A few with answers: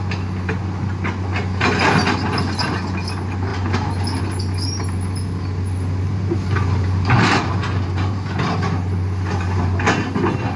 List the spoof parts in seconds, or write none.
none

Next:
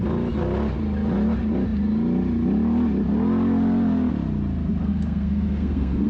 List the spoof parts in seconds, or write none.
4.8-6.1 (codec, SNAC)

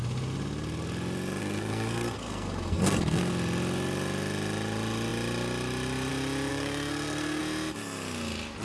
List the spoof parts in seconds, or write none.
1.4-3.3 (codec, SNAC); 6.5-7.4

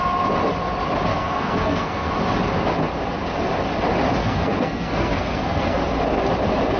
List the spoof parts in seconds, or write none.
1.1-2.1 (codec, SNAC); 4.2-5.8